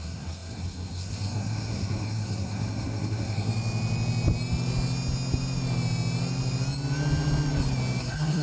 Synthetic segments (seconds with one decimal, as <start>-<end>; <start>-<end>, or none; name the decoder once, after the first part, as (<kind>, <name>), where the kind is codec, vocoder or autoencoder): 0.0-3.5 (codec, SNAC); 8.0-8.4